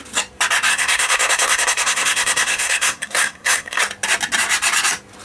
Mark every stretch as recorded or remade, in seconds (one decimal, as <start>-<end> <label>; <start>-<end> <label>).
0.0-0.7 recorded; 0.7-3.8 remade; 3.8-5.2 recorded